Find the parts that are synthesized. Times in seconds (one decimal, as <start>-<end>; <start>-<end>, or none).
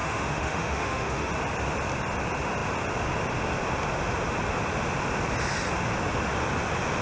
0.0-1.3